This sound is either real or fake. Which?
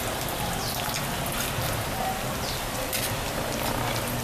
real